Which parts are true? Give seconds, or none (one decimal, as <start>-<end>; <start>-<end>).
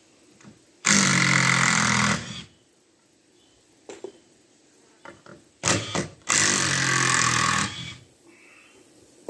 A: 0.0-9.3